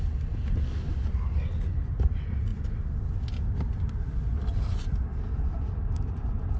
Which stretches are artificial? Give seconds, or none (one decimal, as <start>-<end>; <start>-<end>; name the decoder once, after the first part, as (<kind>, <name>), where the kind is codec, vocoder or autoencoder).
none